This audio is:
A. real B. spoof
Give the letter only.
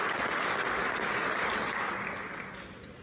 A